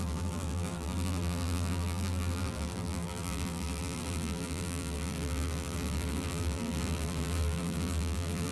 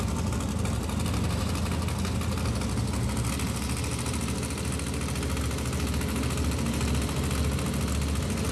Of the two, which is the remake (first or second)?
first